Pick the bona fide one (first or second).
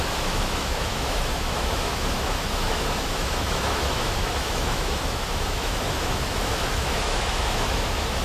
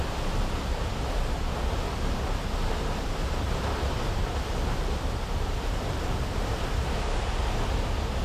second